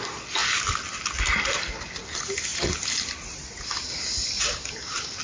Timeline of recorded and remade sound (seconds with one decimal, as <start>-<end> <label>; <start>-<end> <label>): 0.0-5.2 recorded